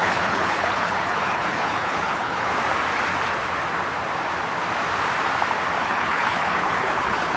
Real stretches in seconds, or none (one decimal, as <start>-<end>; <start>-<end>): 2.5-5.8